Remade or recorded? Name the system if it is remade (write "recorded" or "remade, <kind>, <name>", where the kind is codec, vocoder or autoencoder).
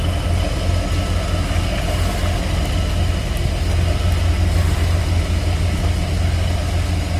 recorded